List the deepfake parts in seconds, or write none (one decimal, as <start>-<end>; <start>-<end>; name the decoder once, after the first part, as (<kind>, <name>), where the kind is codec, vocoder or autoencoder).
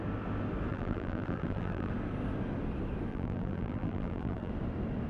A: 0.7-1.9 (vocoder, BigVGAN v2); 3.1-4.5